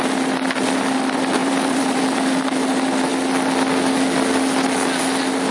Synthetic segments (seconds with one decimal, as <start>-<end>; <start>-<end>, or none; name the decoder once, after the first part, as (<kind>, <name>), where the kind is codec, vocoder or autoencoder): 1.4-2.0 (vocoder, BigVGAN v2)